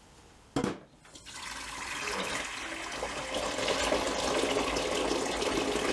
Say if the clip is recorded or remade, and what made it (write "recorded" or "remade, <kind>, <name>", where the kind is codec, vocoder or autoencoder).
recorded